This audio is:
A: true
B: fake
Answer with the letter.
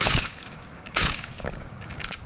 B